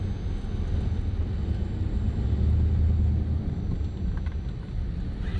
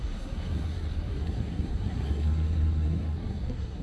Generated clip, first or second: second